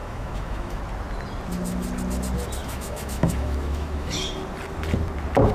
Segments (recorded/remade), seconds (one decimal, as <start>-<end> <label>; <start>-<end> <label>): 0.0-0.8 remade; 0.8-2.6 recorded; 2.6-4.1 remade; 4.1-5.5 recorded